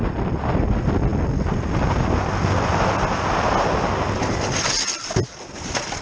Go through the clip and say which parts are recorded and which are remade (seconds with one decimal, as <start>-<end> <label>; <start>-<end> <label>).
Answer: 0.0-6.0 recorded